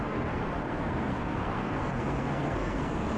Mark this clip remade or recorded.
remade